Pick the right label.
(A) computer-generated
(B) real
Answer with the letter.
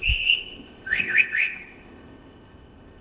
A